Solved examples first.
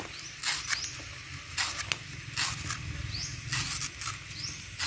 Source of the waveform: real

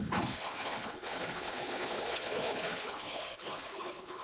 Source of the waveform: fake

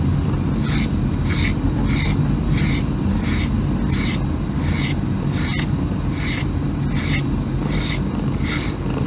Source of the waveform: real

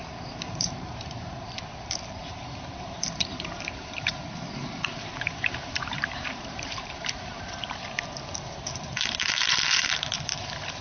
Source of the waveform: fake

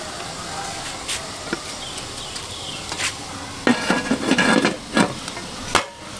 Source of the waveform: real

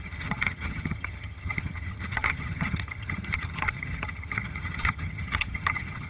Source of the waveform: fake